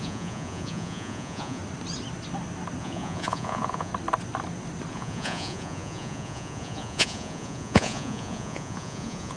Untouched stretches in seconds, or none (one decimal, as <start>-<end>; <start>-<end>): 1.6-2.8; 3.9-4.9